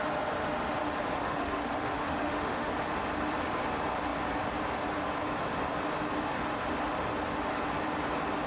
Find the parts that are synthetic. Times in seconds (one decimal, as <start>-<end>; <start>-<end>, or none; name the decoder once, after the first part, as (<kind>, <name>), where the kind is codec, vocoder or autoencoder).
1.2-2.7 (autoencoder, DAC-VAE)